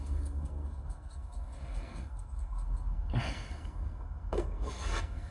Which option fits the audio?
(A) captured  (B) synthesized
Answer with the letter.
B